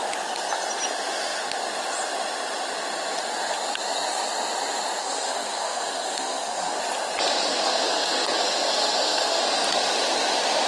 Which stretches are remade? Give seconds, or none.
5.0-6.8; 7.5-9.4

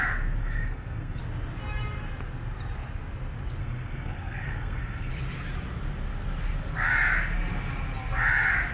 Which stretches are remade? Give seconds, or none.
0.4-1.2; 3.6-5.1

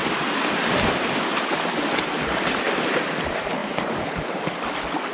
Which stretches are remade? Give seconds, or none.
none

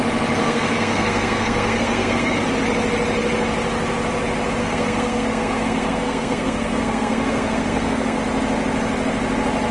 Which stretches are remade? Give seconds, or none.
0.4-2.4; 4.6-8.2

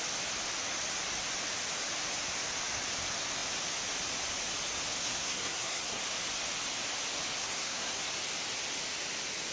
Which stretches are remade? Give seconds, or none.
5.0-6.0; 7.4-8.1